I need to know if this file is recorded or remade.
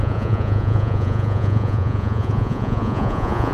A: remade